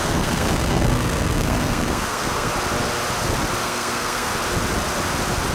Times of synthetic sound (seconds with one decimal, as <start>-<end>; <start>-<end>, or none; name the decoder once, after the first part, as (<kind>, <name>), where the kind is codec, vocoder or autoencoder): 0.0-2.5 (codec, SNAC); 3.6-4.3